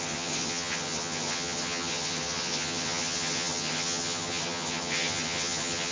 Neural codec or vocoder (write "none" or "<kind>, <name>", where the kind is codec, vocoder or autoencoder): vocoder, HiFi-GAN